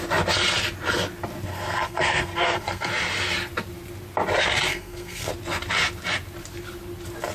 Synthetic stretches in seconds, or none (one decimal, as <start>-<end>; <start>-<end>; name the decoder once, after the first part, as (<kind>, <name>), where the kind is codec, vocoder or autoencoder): 1.5-2.9 (codec, SNAC); 4.7-5.3